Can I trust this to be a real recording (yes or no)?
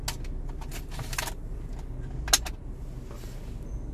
yes